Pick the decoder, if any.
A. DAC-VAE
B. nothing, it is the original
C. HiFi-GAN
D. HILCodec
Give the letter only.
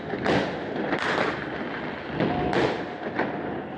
B